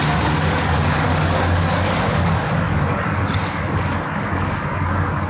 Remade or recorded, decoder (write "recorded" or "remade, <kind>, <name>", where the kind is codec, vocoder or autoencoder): remade, codec, DAC